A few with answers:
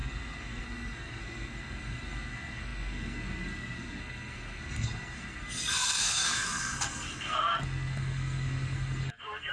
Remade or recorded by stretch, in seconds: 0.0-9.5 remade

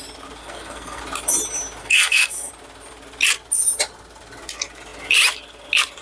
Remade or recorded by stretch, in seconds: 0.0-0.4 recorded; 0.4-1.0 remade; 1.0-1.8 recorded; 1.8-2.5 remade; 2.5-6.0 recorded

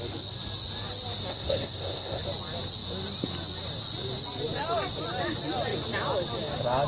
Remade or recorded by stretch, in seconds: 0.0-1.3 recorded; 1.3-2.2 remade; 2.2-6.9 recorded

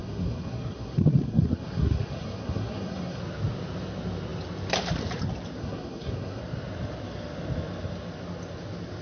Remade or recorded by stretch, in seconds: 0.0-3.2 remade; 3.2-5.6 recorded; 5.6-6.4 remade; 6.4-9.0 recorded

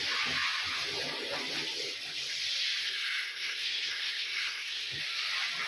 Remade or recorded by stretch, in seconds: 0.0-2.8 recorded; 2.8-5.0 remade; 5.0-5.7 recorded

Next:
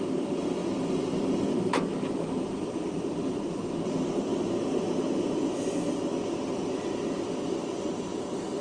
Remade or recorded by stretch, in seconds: 0.0-8.6 recorded

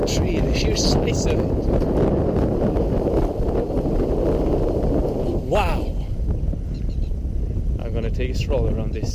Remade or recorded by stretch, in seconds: 0.0-9.1 recorded